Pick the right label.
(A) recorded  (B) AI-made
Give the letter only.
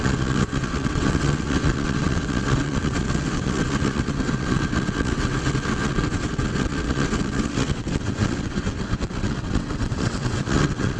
B